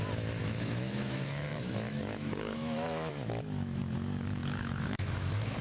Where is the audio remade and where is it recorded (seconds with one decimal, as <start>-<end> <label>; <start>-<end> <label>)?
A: 0.0-0.4 recorded; 0.4-3.8 remade; 3.8-4.4 recorded; 4.4-5.6 remade